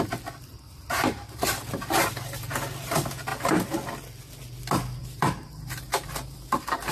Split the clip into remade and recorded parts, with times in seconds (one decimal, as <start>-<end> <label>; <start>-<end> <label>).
0.0-0.5 recorded; 0.5-1.7 remade; 1.7-5.0 recorded; 5.0-6.9 remade